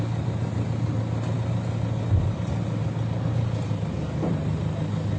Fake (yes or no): no